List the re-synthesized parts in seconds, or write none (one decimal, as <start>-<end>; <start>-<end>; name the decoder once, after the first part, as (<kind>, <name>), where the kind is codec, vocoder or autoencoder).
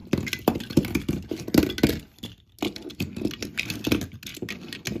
none